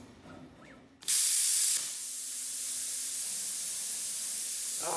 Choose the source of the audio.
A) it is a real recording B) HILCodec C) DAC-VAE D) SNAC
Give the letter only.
A